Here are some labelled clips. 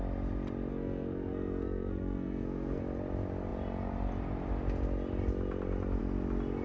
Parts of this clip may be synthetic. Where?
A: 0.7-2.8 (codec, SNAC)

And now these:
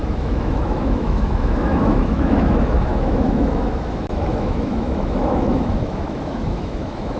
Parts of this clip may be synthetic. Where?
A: 0.0-7.2 (autoencoder, DAC-VAE)

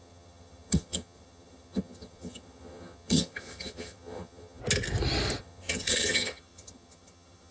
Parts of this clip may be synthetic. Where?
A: 0.0-4.6 (vocoder, HiFi-GAN); 5.4-7.5